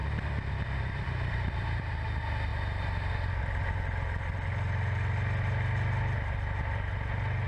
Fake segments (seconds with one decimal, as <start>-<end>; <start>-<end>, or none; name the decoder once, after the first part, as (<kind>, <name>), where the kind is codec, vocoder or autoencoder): 0.0-1.8 (vocoder, BigVGAN v2)